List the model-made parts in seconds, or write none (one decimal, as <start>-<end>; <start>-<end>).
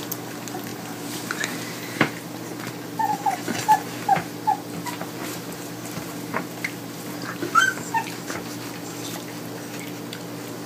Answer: 0.7-1.4; 5.2-7.9